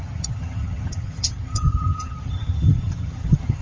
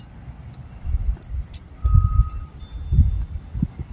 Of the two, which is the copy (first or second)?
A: first